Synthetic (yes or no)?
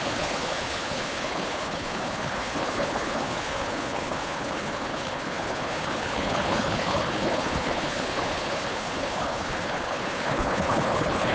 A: yes